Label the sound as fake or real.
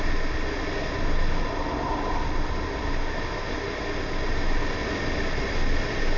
real